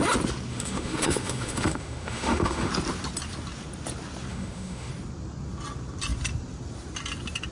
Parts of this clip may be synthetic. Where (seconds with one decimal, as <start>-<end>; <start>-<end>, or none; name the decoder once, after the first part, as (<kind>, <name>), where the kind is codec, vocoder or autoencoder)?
0.5-2.7 (autoencoder, DAC-VAE); 4.3-4.9